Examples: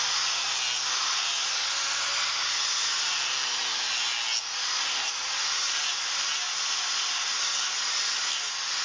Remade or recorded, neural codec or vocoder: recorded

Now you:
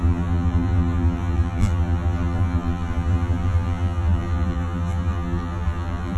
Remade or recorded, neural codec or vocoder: remade, vocoder, BigVGAN v2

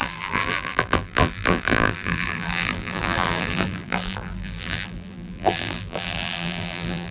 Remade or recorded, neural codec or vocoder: remade, vocoder, BigVGAN v2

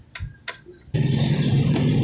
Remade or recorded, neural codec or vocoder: recorded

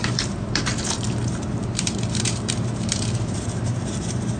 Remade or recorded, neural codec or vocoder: remade, vocoder, BigVGAN v2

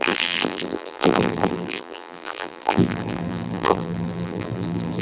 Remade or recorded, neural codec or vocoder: remade, vocoder, BigVGAN v2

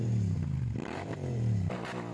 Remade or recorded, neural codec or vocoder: remade, vocoder, BigVGAN v2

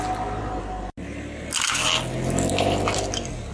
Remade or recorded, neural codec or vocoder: recorded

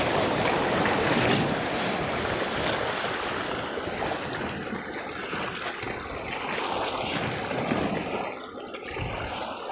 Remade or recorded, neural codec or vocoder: recorded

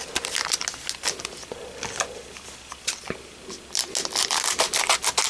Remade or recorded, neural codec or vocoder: recorded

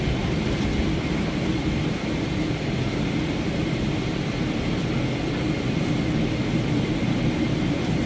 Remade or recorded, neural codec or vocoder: remade, vocoder, BigVGAN v2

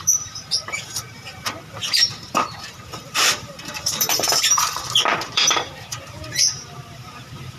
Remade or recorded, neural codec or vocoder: remade, vocoder, BigVGAN v2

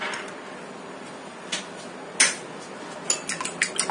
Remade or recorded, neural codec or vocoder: recorded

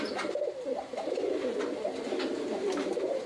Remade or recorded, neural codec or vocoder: recorded